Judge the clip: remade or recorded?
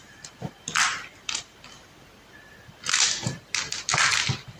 recorded